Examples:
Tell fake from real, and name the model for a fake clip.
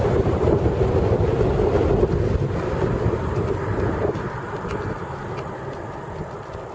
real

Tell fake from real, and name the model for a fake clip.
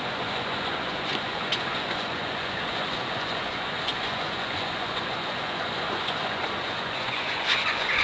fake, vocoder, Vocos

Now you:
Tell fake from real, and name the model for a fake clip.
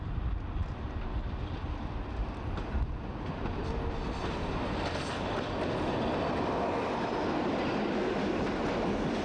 real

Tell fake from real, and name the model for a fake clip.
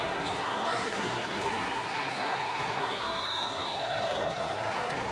fake, codec, SNAC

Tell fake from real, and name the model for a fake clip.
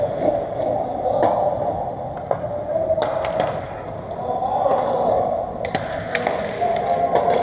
real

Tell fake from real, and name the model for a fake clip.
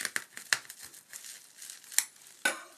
real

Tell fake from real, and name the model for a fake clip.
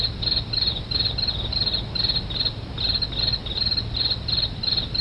real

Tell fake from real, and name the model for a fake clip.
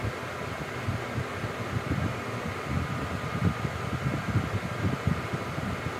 real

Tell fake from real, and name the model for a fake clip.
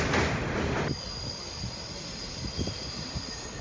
real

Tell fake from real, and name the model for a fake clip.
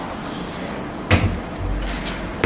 real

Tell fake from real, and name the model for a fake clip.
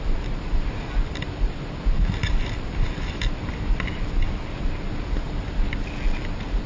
real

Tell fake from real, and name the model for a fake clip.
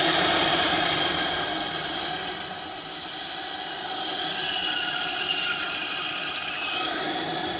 fake, vocoder, BigVGAN v2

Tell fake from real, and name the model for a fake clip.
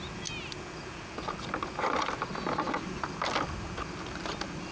real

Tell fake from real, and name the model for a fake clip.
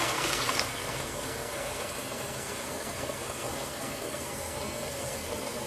fake, codec, SNAC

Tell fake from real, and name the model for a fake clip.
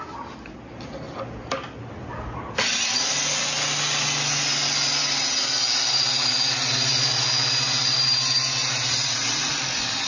real